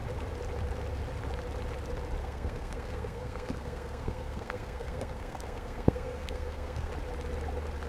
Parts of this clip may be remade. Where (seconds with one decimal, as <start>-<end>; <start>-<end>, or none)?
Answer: 2.2-6.9

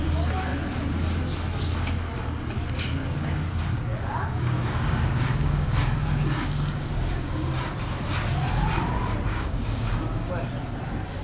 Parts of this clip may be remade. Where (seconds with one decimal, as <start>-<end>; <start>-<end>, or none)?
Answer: 3.0-7.5; 9.3-10.3

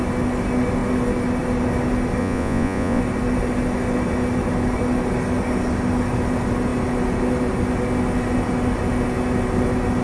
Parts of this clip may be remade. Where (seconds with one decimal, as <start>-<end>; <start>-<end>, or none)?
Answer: 2.2-3.0

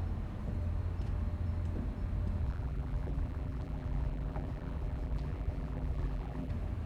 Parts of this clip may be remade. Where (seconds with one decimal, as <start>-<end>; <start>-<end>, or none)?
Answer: 2.4-6.5